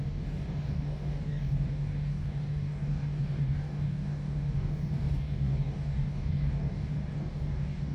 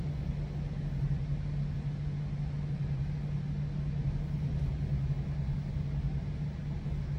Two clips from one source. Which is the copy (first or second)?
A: first